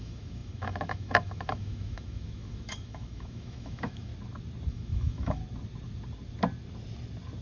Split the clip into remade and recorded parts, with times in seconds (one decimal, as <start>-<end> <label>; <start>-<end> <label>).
0.0-4.1 remade; 4.1-4.7 recorded; 4.7-5.4 remade; 5.4-7.4 recorded